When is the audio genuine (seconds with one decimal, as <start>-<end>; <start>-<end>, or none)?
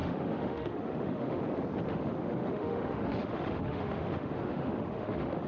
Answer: 1.4-1.9